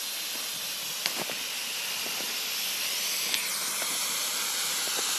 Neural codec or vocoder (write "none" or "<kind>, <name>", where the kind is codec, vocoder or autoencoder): none